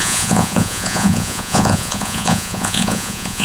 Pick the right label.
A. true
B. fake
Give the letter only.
B